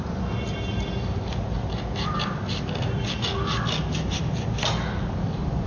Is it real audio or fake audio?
fake